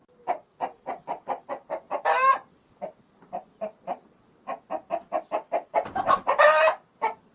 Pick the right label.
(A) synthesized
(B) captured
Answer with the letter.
B